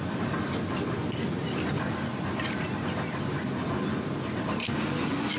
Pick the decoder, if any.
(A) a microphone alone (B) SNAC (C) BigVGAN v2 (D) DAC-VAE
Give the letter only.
A